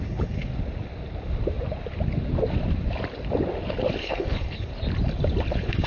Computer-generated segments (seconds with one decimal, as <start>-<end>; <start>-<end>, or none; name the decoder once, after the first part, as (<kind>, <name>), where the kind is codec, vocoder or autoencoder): 0.0-0.5 (codec, HILCodec); 4.0-4.7; 5.5-5.9